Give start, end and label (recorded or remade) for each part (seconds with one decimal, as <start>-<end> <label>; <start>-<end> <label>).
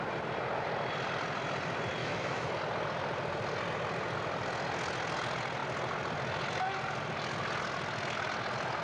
0.0-2.0 recorded; 2.0-2.5 remade; 2.5-8.8 recorded